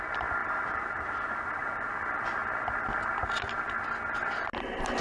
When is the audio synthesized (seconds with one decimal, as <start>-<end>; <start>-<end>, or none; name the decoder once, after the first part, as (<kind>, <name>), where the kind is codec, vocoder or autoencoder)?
0.4-2.0 (vocoder, BigVGAN v2)